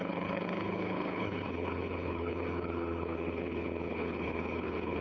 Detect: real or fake fake